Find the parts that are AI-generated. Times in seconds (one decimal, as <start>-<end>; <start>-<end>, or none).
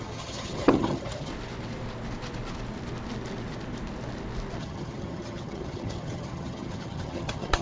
0.0-1.3; 4.6-7.6